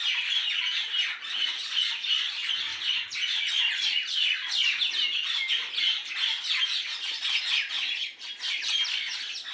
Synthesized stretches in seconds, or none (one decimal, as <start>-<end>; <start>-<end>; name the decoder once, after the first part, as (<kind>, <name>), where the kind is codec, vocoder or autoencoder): none

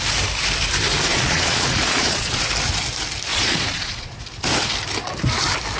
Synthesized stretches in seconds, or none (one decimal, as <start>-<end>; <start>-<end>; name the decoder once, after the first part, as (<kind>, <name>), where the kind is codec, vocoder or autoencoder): 1.1-2.4 (vocoder, Vocos); 3.3-4.2

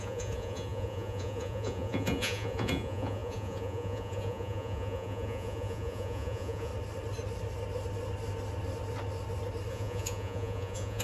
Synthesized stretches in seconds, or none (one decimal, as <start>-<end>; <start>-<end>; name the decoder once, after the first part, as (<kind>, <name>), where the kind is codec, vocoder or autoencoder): 0.0-6.7 (vocoder, Vocos); 9.7-11.0

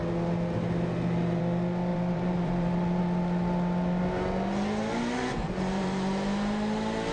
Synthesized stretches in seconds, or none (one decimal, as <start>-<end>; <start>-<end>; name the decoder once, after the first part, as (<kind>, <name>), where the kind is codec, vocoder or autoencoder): 1.9-3.0 (vocoder, BigVGAN v2)

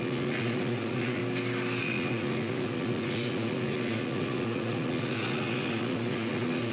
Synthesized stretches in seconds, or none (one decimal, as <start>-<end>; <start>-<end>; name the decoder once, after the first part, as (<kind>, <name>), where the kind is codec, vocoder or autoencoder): 0.0-1.2 (vocoder, Vocos); 1.8-6.7

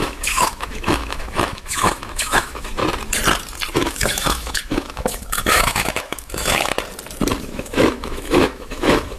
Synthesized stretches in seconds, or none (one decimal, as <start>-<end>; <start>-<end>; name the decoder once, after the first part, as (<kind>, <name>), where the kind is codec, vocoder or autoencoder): 0.0-2.8 (autoencoder, DAC-VAE); 3.7-6.7; 7.4-9.2